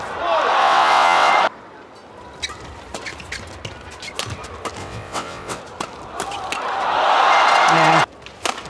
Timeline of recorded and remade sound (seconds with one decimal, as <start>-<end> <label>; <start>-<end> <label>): 0.0-0.6 recorded; 0.6-1.3 remade; 1.3-4.8 recorded; 4.8-5.6 remade; 5.6-8.7 recorded